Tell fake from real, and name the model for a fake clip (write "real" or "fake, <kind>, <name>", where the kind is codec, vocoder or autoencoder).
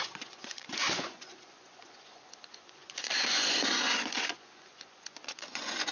fake, vocoder, Vocos